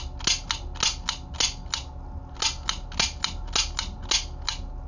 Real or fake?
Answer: real